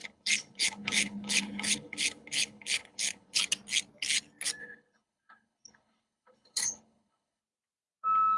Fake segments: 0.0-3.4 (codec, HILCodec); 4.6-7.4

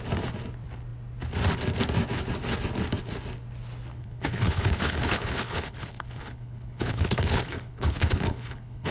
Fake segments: 3.9-8.9 (codec, HILCodec)

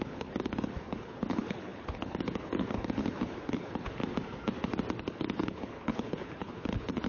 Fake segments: 0.0-4.0 (codec, HILCodec); 5.0-7.1

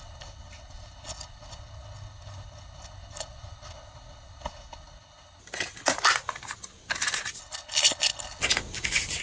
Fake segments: 0.0-5.4 (codec, HILCodec); 7.4-8.4